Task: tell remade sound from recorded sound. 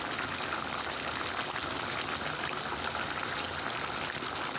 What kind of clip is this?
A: recorded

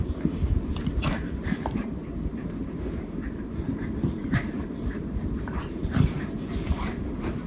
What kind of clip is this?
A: remade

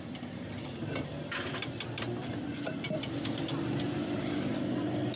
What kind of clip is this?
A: remade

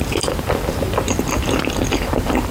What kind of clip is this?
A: remade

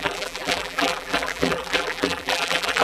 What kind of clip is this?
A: remade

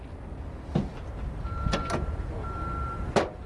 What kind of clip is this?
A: recorded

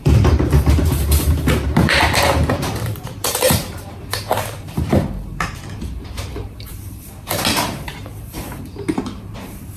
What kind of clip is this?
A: remade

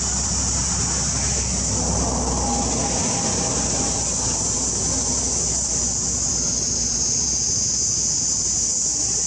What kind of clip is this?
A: recorded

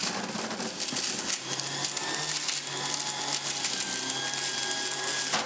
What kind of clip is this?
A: recorded